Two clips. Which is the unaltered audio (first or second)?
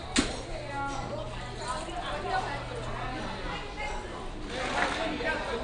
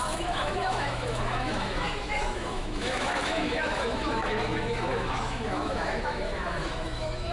first